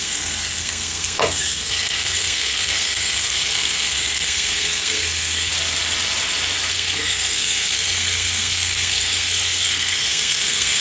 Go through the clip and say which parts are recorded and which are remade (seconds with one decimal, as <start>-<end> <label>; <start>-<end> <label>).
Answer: 0.0-5.5 remade; 5.5-6.7 recorded; 6.7-10.8 remade

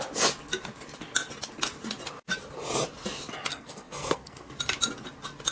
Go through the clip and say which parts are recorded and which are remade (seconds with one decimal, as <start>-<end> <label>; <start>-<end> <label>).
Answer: 0.0-3.5 recorded; 3.5-4.5 remade; 4.5-5.5 recorded